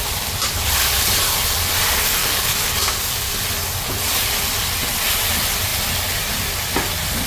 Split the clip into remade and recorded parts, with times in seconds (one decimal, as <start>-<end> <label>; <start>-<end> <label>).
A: 0.0-2.2 recorded; 2.2-3.3 remade; 3.3-7.3 recorded